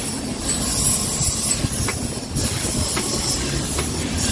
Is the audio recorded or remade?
recorded